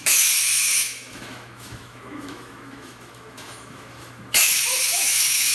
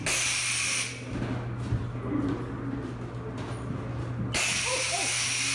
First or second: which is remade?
first